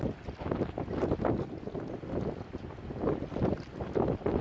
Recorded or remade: recorded